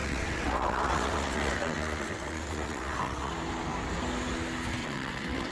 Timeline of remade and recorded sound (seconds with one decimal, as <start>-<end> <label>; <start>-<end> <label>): 0.0-3.3 remade; 3.3-4.8 recorded; 4.8-5.5 remade